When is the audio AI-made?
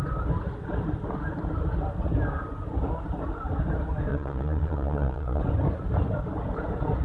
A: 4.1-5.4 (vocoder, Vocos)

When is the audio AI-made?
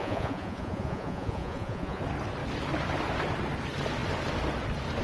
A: 0.0-2.0 (vocoder, Vocos)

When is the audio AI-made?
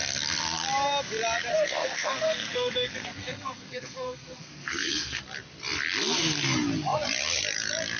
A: 1.5-5.2 (codec, SNAC)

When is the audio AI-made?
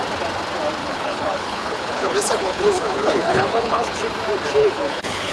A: 0.8-4.0 (codec, HILCodec); 4.6-5.3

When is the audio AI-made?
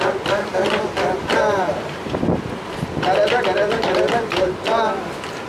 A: none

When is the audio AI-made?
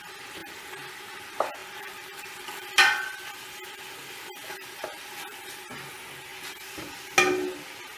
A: 1.6-5.6 (vocoder, BigVGAN v2); 6.3-7.1